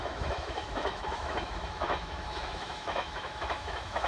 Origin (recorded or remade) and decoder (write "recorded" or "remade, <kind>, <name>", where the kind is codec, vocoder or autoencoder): remade, autoencoder, DAC-VAE